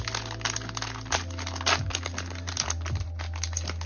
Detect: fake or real real